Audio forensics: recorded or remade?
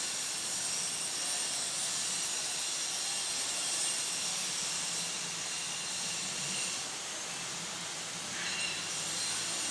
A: recorded